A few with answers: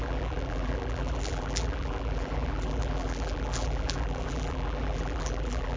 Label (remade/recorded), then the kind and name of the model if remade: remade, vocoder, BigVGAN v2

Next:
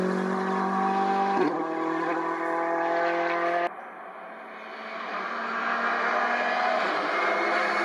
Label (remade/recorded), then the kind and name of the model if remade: recorded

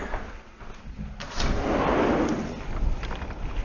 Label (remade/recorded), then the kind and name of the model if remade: recorded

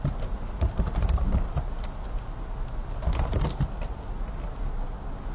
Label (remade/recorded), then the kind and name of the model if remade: recorded